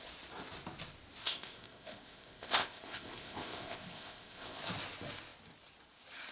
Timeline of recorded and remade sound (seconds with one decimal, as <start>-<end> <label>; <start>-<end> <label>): 0.0-1.2 recorded; 1.2-4.6 remade; 4.6-6.3 recorded